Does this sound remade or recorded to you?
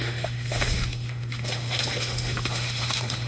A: remade